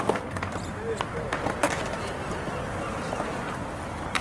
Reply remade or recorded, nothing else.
recorded